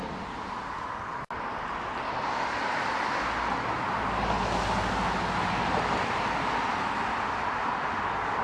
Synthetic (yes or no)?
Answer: no